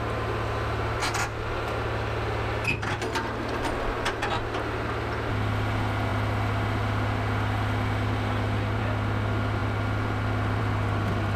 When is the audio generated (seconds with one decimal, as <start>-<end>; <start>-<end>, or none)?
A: none